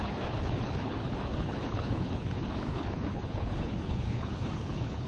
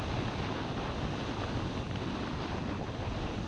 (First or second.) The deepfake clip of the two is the first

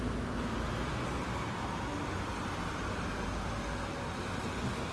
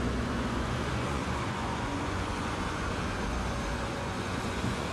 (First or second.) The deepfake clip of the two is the second